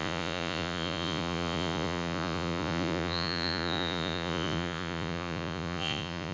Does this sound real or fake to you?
fake